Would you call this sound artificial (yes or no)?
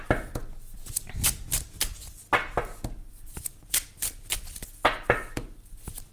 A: no